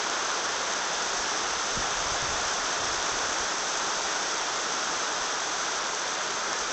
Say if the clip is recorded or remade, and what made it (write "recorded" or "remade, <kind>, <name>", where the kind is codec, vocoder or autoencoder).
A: remade, vocoder, BigVGAN v2